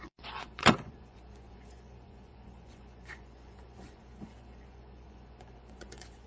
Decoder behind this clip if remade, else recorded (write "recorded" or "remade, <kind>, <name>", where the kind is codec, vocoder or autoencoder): remade, vocoder, Vocos